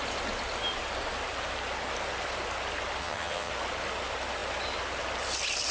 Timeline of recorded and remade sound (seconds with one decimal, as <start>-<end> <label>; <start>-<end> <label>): 0.0-3.0 recorded; 3.0-3.5 remade; 3.5-5.7 recorded